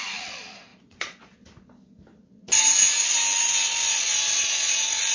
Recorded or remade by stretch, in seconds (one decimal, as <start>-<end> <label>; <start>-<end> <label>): 0.0-0.7 recorded; 0.7-1.2 remade; 1.2-5.1 recorded